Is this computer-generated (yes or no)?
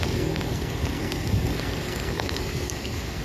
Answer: yes